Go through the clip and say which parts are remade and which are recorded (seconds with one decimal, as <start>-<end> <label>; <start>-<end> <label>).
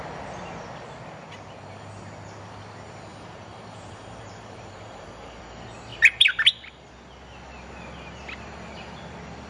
0.0-3.1 recorded; 3.1-5.4 remade; 5.4-5.9 recorded; 5.9-6.9 remade; 6.9-9.5 recorded